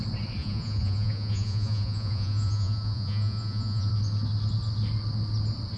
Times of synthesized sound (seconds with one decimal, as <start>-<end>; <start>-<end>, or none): 0.4-3.9